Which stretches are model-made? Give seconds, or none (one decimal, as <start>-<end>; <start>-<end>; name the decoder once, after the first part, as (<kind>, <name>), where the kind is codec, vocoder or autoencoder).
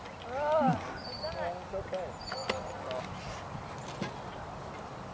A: none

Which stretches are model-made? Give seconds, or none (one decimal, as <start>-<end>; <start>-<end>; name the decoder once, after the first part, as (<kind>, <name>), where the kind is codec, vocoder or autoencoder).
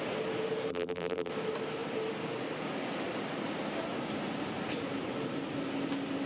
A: 0.7-1.3 (vocoder, BigVGAN v2)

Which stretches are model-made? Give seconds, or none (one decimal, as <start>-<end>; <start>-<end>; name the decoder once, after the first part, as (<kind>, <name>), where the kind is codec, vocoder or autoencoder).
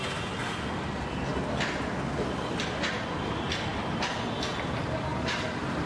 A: none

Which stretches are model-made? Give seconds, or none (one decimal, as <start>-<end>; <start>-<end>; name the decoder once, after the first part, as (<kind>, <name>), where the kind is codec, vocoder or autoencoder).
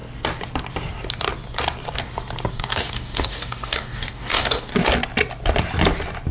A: 2.5-4.7 (codec, DAC)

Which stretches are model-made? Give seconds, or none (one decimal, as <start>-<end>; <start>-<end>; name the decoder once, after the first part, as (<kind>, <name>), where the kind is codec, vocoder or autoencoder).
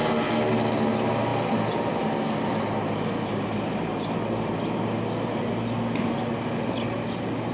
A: none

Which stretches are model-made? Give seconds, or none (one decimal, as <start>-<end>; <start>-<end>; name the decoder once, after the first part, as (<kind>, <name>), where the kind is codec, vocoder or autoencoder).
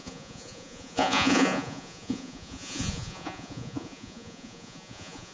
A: 0.0-5.3 (vocoder, Vocos)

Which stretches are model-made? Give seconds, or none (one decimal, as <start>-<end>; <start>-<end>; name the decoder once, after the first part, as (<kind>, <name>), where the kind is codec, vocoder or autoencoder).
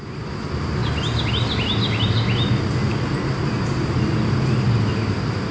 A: none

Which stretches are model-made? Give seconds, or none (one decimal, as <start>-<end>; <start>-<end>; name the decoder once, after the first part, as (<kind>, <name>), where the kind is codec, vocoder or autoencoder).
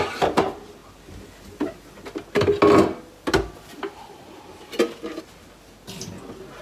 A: none